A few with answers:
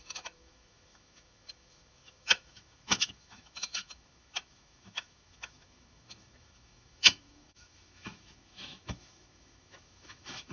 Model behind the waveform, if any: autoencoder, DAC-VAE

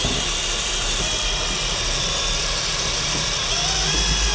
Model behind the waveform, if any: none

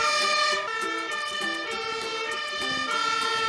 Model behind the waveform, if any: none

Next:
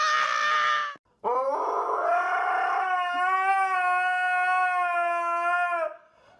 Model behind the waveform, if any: none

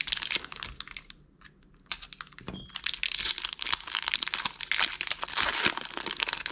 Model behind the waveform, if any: none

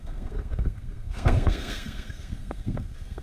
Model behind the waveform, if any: codec, SNAC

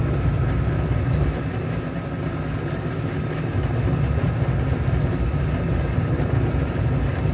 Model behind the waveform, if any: none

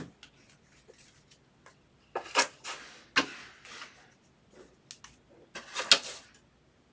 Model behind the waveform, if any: none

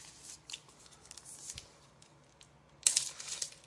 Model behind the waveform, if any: none